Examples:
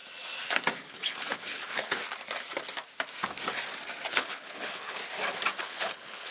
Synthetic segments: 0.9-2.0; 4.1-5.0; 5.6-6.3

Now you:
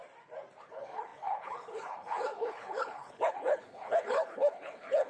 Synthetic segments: 0.6-5.1

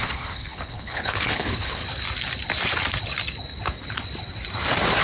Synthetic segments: 0.0-1.8

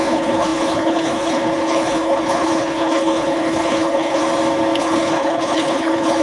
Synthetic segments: 0.0-4.2; 4.8-6.2

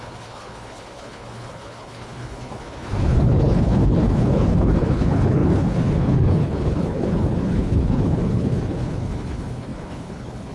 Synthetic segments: 0.0-10.5

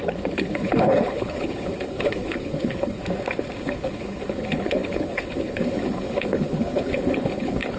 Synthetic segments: 0.0-3.0; 3.6-7.8

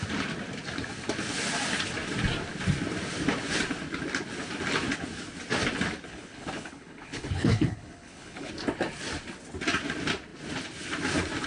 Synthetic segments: 6.1-8.5

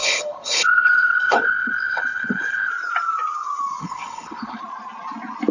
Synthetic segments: 0.0-2.7; 3.8-4.6